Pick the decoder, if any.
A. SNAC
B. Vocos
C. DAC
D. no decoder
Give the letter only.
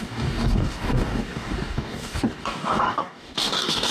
C